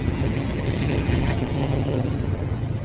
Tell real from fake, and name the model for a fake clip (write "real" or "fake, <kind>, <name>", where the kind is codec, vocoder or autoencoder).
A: fake, vocoder, HiFi-GAN